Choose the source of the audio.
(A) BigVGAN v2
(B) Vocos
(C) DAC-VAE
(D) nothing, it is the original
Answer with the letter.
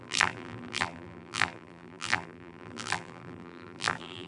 A